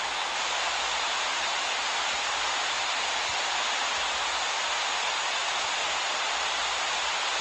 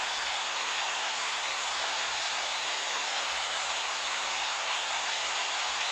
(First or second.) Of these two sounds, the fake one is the second